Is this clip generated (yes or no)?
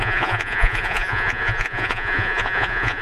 yes